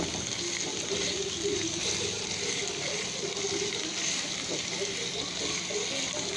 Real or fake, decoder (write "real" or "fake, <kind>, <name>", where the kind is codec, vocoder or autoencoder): real